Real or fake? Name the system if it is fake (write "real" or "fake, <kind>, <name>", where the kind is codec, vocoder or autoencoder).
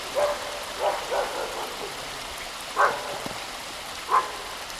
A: real